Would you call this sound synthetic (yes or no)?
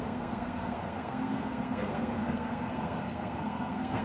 yes